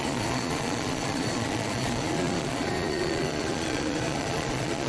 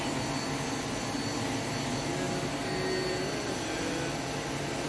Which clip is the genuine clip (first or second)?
second